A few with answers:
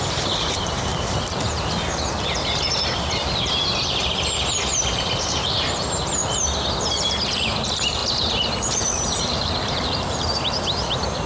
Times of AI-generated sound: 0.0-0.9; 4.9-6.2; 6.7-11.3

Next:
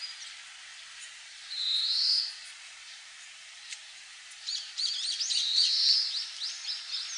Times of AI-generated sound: 0.7-4.9

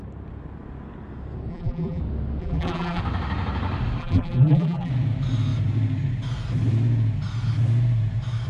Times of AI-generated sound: 1.5-2.0; 2.4-3.0; 4.0-4.9

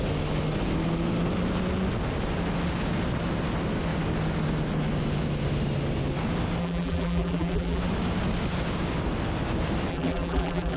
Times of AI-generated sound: 6.6-7.8; 9.9-10.8